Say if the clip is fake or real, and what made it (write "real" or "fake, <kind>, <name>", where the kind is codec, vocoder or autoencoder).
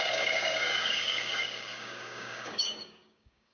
fake, codec, DAC